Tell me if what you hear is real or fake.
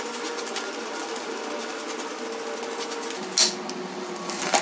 real